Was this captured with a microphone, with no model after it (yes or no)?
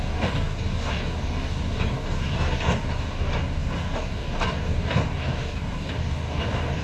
no